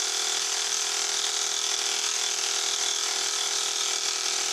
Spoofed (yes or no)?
yes